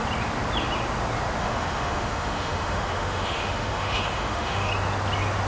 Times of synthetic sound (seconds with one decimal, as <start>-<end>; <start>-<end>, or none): 1.4-4.7